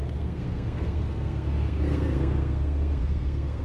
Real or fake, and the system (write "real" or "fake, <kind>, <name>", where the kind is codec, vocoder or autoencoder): fake, codec, SNAC